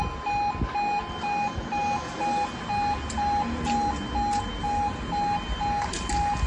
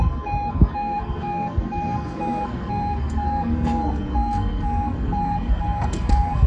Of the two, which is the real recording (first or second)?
first